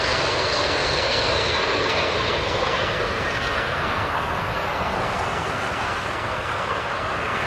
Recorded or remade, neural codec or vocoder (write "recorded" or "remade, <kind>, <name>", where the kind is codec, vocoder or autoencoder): remade, codec, SNAC